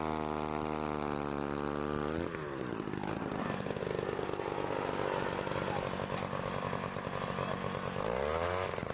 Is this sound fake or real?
real